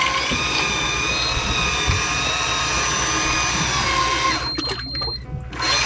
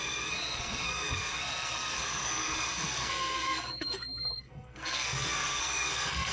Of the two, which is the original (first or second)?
first